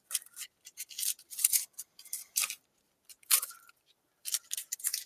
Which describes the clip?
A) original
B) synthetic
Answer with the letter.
B